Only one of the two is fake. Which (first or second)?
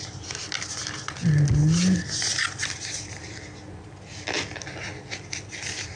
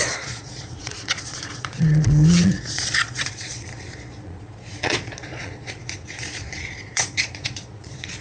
second